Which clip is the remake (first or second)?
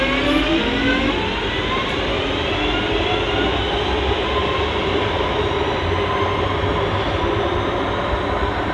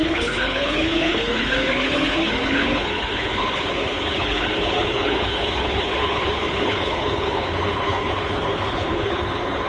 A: second